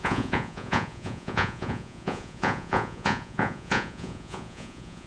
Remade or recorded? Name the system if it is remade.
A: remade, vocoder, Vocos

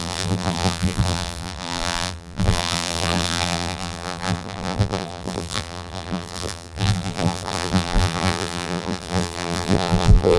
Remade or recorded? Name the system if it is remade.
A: remade, vocoder, BigVGAN v2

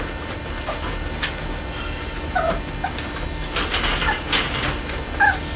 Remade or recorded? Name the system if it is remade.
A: recorded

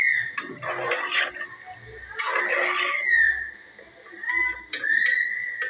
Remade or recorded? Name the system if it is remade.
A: recorded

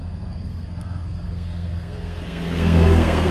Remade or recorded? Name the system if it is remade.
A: remade, codec, SNAC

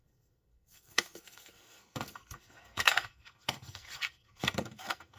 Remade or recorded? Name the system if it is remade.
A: remade, codec, SNAC